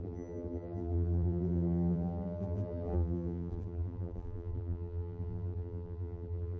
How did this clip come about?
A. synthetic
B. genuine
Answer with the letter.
A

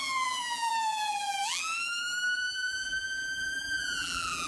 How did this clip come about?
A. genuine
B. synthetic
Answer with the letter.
B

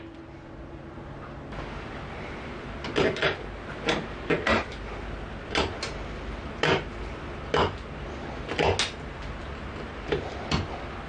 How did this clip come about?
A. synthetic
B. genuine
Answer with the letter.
B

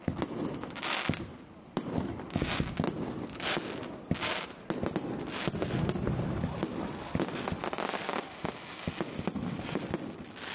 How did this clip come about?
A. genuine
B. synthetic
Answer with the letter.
A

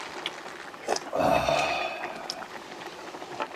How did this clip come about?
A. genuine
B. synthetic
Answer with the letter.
A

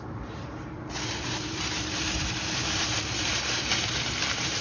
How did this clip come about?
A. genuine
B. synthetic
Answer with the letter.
B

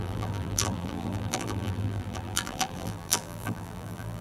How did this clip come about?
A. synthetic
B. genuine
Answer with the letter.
A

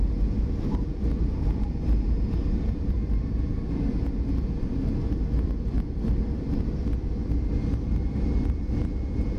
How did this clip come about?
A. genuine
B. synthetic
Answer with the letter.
B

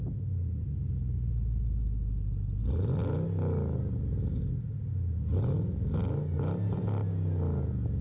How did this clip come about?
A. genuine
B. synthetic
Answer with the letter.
A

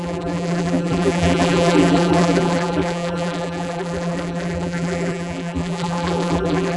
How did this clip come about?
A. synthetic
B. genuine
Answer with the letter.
A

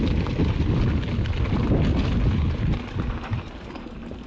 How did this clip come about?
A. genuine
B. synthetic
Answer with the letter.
A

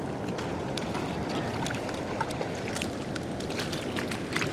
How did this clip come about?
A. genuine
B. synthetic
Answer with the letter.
A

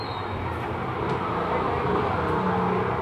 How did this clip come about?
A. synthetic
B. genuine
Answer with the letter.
B